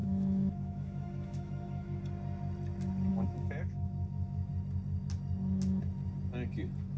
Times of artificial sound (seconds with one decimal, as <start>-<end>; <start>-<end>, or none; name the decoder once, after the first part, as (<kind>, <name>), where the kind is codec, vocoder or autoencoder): 0.0-2.0 (autoencoder, DAC-VAE); 3.1-4.5